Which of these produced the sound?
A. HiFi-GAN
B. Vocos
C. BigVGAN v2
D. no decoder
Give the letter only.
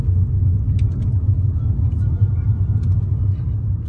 D